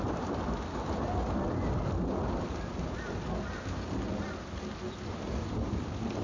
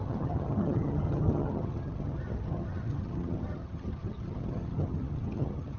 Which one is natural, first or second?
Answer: first